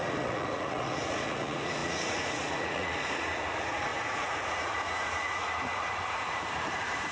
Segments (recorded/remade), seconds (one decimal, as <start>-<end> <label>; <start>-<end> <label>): 0.0-7.1 remade